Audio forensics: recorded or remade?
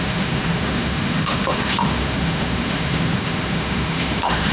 remade